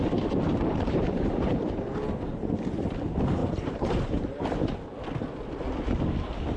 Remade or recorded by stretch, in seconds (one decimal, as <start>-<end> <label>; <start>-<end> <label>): 0.0-0.5 recorded; 0.5-1.6 remade; 1.6-3.4 recorded; 3.4-4.1 remade; 4.1-6.6 recorded